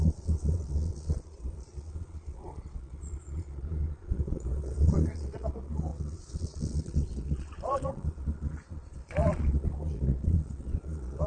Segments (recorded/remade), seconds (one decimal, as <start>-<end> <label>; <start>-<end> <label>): 0.0-11.3 remade